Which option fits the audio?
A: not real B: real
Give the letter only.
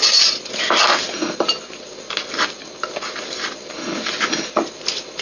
B